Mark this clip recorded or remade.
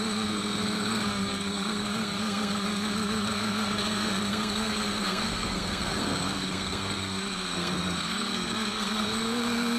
remade